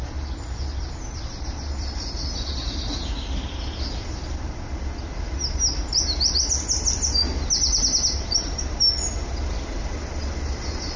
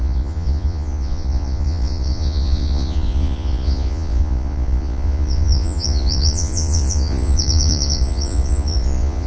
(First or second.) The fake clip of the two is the second